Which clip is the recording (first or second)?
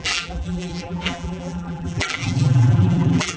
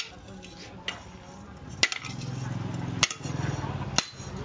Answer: second